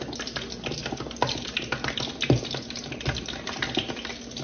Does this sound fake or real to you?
real